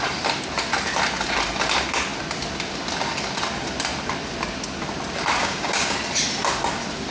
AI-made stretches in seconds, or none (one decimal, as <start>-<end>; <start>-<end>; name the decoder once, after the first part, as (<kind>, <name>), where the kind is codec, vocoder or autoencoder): 5.4-6.0 (codec, DAC)